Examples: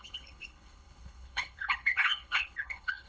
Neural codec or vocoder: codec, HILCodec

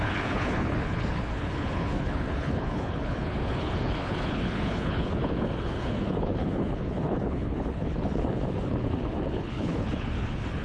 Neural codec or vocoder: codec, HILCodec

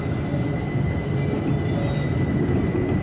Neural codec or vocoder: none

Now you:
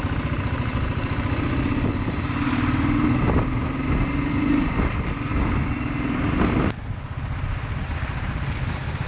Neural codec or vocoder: none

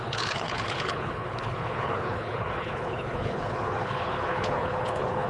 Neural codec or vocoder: codec, HILCodec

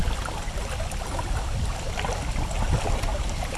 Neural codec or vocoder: none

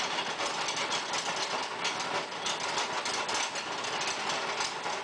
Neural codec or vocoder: none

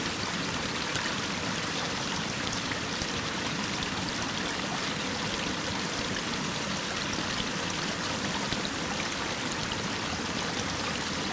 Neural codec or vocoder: none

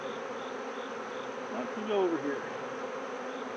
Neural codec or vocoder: none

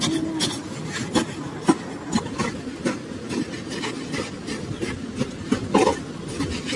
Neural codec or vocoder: none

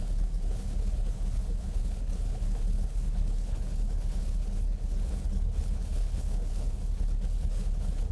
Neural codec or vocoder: codec, HILCodec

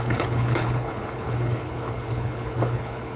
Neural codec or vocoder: codec, HILCodec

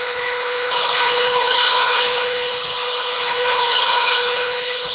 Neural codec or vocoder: codec, HILCodec